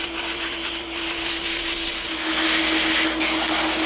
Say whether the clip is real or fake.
real